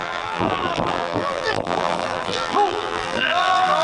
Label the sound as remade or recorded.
remade